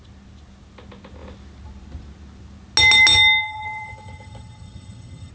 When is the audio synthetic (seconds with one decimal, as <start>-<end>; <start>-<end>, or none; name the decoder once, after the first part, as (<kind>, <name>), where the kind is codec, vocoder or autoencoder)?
3.4-5.3 (vocoder, HiFi-GAN)